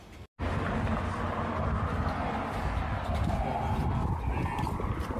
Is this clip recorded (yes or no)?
yes